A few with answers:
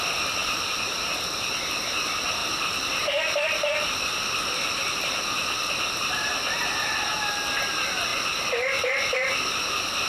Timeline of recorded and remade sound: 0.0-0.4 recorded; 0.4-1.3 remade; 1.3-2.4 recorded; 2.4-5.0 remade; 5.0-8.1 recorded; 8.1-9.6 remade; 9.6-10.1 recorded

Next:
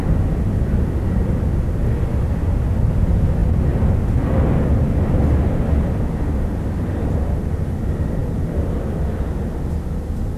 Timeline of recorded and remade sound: 0.0-10.4 recorded

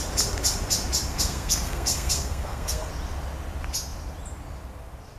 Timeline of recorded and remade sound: 0.0-1.1 recorded; 1.1-2.9 remade; 2.9-5.2 recorded

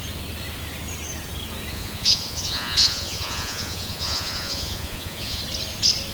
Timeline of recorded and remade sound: 0.0-1.7 recorded; 1.7-5.4 remade; 5.4-6.1 recorded

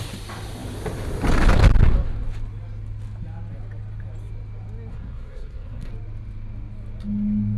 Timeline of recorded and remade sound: 0.0-4.9 recorded; 4.9-5.9 remade; 5.9-7.6 recorded

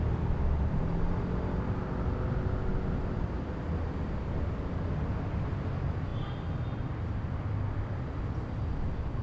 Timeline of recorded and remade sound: 0.0-9.2 recorded

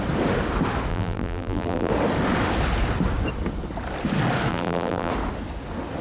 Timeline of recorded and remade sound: 0.0-0.9 recorded; 0.9-1.9 remade; 1.9-4.5 recorded; 4.5-5.1 remade; 5.1-6.0 recorded